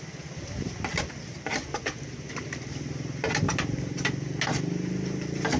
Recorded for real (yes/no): yes